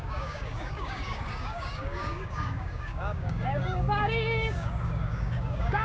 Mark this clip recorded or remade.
remade